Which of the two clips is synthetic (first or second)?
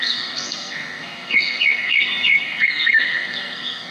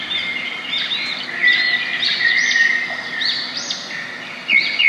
first